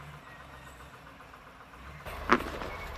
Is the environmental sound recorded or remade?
remade